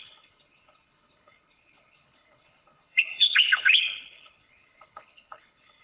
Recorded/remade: remade